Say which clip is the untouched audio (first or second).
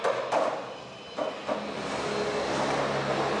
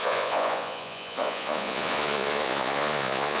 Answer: first